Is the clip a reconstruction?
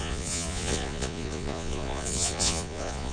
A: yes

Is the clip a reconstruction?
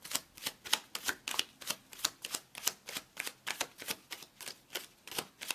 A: no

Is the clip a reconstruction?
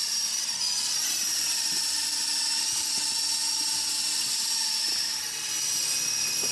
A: no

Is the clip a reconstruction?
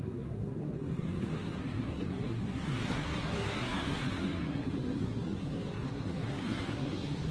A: yes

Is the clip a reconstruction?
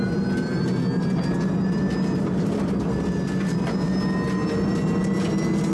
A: no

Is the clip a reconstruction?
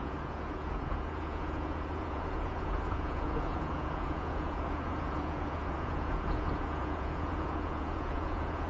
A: yes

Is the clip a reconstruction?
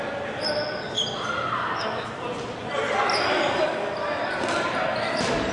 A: no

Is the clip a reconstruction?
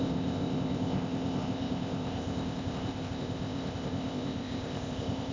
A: yes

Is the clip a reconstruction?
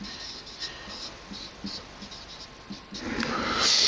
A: no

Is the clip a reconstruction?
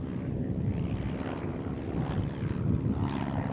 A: no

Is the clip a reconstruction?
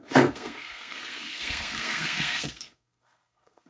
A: yes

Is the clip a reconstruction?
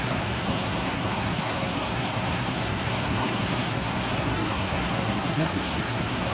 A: yes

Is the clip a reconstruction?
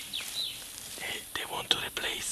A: no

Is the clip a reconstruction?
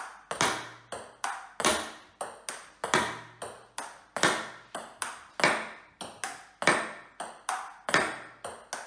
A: no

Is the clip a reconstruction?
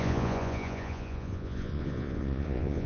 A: yes